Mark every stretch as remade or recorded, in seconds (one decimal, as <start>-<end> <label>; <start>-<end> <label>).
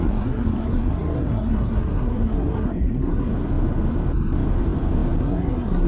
0.0-3.3 remade; 3.3-5.2 recorded; 5.2-5.9 remade